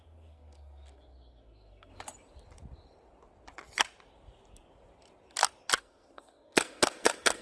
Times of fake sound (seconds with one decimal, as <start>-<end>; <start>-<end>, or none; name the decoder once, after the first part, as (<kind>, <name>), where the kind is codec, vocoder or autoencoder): 0.0-1.9 (codec, SNAC); 5.8-7.4